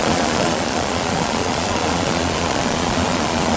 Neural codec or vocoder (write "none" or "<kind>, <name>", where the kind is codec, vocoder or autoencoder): vocoder, Vocos